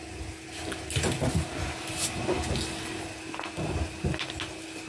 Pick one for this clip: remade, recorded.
recorded